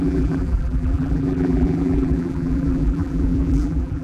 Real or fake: fake